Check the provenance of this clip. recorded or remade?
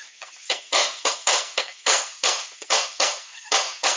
remade